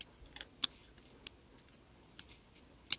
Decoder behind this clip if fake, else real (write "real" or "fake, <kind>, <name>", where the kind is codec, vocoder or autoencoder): real